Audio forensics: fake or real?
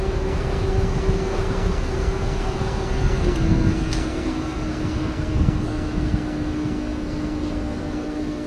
fake